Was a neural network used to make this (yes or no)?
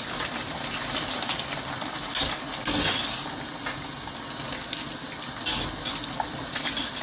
no